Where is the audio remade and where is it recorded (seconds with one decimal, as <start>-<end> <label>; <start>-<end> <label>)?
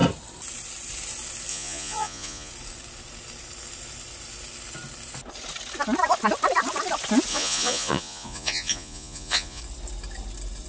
0.0-1.5 recorded; 1.5-2.5 remade; 2.5-7.3 recorded; 7.3-9.6 remade; 9.6-10.7 recorded